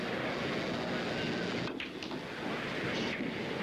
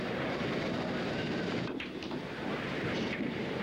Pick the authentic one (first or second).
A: first